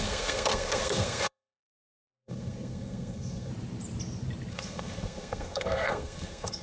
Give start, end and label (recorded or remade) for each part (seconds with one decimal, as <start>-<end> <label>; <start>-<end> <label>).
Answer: 0.0-3.5 remade; 3.5-4.5 recorded; 4.5-6.6 remade